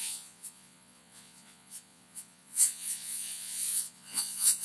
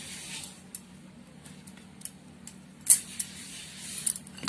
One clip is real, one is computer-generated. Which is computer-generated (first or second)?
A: first